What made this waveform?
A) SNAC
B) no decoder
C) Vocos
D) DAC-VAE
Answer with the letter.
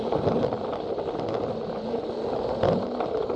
B